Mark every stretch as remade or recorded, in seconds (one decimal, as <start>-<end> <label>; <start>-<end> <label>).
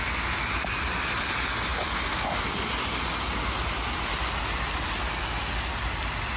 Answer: 0.0-6.4 recorded